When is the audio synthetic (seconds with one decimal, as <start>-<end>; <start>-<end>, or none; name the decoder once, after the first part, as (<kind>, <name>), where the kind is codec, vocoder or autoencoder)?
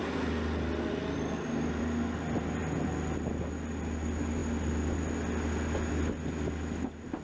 none